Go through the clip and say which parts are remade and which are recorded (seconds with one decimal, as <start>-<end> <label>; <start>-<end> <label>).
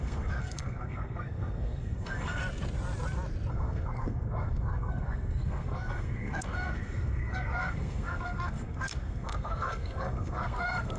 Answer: 0.0-2.4 remade; 2.4-3.5 recorded; 3.5-11.0 remade